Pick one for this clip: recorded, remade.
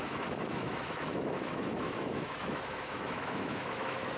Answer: remade